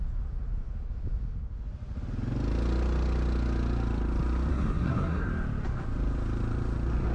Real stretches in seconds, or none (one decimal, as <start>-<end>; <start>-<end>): 0.0-4.5; 5.3-7.1